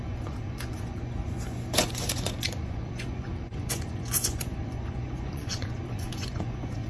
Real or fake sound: fake